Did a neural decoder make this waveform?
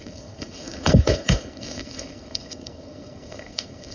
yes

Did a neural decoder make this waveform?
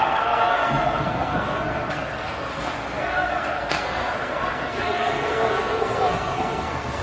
yes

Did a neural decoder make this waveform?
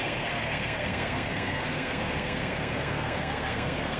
yes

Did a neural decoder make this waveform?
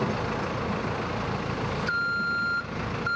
no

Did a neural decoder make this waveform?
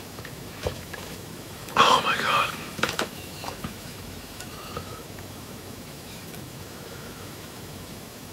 yes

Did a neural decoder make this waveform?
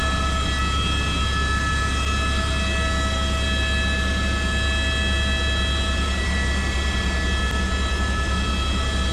no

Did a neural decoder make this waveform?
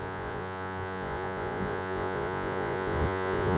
yes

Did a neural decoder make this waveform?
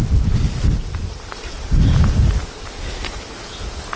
no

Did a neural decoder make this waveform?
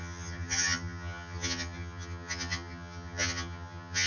yes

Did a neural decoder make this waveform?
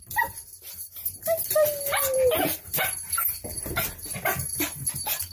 no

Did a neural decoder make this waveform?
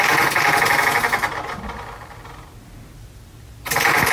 no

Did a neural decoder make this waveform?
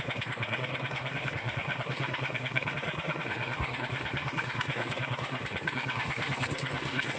yes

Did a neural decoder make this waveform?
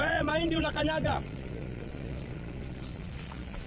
yes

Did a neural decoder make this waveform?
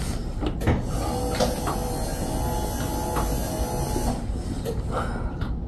no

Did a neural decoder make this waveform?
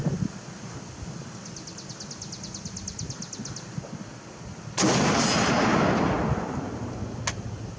no